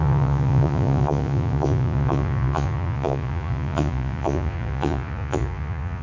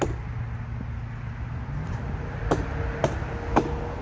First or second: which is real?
second